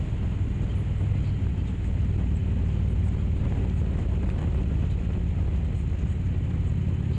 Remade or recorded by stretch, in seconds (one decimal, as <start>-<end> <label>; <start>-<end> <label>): 0.0-7.2 recorded